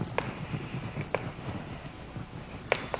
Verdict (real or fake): real